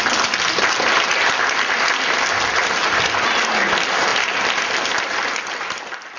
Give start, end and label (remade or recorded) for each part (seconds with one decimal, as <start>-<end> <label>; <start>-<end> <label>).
0.0-6.2 recorded